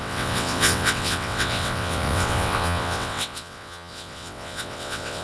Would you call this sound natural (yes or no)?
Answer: no